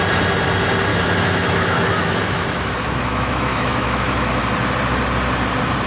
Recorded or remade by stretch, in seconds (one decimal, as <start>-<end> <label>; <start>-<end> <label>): 0.0-0.9 recorded; 0.9-4.4 remade; 4.4-5.9 recorded